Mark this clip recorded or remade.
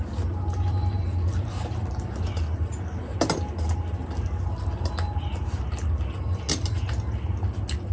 recorded